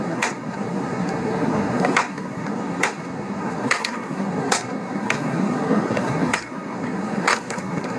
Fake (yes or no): yes